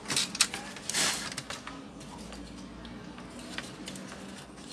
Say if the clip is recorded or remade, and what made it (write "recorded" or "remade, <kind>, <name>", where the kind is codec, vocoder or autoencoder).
recorded